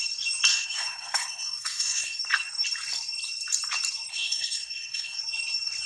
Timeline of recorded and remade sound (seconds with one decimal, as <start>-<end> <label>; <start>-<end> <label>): 0.0-0.5 recorded; 0.5-2.2 remade; 2.2-4.1 recorded; 4.1-5.2 remade; 5.2-5.9 recorded